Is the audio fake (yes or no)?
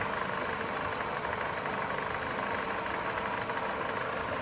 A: no